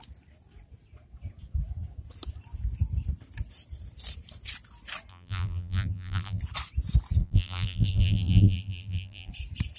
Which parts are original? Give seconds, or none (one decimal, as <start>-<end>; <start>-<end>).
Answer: 0.0-5.1; 6.4-7.2; 9.3-9.8